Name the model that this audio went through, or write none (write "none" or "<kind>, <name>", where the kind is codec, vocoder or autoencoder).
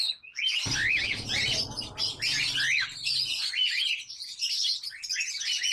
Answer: none